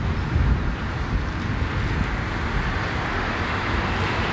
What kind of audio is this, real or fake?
real